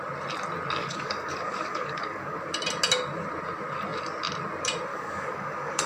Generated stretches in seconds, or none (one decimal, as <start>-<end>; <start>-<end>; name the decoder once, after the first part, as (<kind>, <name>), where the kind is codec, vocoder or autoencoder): 0.8-2.4 (codec, DAC); 4.9-5.9